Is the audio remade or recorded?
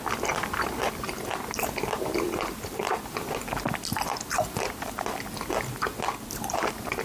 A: recorded